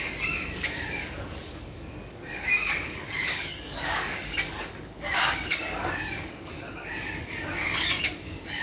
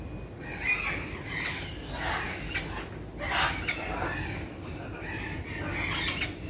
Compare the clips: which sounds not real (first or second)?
first